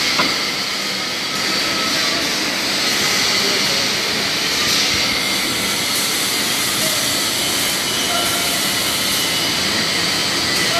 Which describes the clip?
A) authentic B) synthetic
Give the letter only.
A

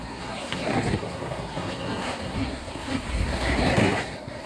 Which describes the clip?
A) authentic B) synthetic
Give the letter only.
B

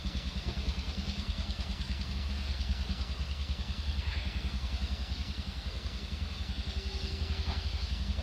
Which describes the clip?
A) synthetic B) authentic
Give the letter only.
A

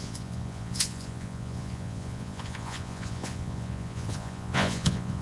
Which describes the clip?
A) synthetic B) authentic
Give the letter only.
A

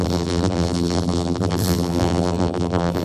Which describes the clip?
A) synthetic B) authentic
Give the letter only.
A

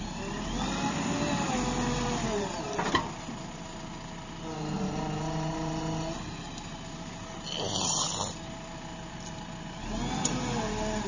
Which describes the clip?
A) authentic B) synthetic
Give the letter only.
A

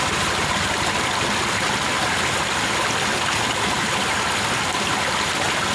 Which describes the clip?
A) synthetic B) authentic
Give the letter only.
B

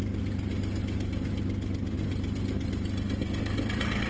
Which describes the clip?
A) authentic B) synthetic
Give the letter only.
A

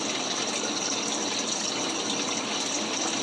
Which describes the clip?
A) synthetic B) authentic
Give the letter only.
B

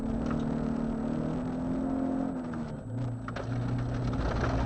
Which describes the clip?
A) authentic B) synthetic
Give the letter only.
A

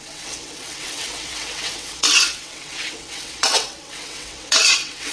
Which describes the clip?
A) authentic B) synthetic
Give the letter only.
B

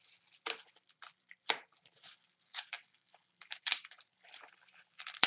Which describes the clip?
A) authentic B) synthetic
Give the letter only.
B